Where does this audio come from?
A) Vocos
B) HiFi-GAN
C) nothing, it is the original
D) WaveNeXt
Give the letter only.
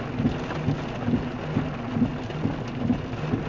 C